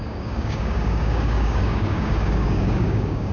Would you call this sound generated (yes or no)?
yes